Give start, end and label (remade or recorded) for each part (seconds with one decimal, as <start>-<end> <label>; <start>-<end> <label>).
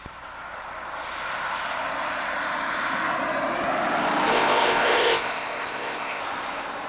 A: 0.0-4.3 recorded; 4.3-6.2 remade; 6.2-6.9 recorded